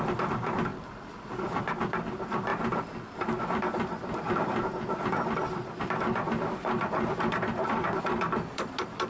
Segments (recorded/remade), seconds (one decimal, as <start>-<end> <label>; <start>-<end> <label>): 0.0-2.5 remade; 2.5-3.4 recorded; 3.4-9.1 remade